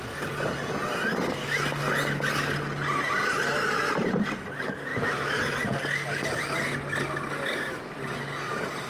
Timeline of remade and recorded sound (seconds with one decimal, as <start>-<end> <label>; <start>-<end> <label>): 0.0-4.9 recorded; 4.9-5.4 remade; 5.4-8.9 recorded

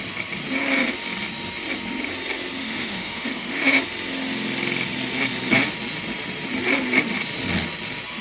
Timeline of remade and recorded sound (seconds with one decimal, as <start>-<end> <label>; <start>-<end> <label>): 0.0-2.6 recorded; 2.6-3.8 remade; 3.8-8.2 recorded

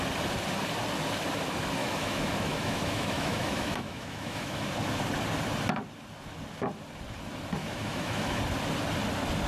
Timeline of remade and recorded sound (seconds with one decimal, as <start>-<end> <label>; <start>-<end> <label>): 0.0-1.8 recorded; 1.8-4.7 remade; 4.7-7.6 recorded; 7.6-8.4 remade; 8.4-9.5 recorded

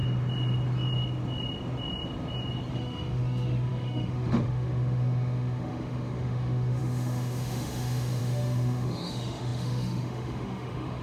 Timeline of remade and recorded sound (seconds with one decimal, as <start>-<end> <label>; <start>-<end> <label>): 0.0-2.7 recorded; 2.7-11.0 remade

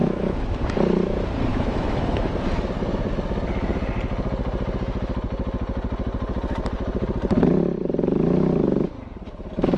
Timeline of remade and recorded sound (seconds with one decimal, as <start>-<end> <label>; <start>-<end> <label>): 0.0-0.6 remade; 0.6-1.5 recorded; 1.5-2.3 remade; 2.3-9.8 recorded

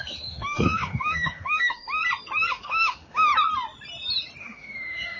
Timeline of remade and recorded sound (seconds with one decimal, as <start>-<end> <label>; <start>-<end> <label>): 0.0-2.0 remade; 2.0-2.5 recorded; 2.5-3.3 remade; 3.3-4.4 recorded; 4.4-5.2 remade

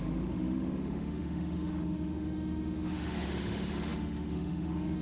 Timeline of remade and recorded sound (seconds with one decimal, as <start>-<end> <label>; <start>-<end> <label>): 0.0-5.0 remade